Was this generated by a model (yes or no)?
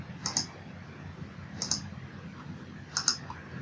no